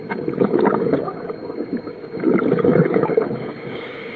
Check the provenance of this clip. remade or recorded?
remade